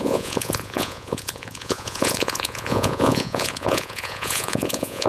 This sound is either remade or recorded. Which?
remade